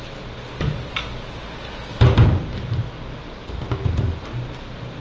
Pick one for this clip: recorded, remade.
recorded